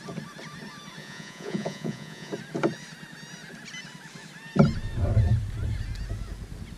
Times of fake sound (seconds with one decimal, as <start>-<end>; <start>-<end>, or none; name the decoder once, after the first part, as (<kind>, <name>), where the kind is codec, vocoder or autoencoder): 1.0-2.3 (vocoder, Vocos)